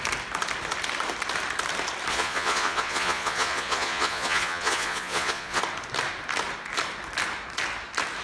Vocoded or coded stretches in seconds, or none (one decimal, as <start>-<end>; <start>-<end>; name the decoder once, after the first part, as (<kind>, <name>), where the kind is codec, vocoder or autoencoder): 2.1-5.6 (vocoder, Vocos)